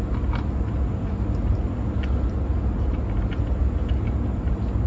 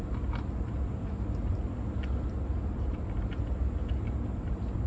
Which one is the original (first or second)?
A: first